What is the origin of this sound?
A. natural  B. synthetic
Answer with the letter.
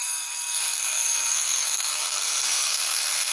B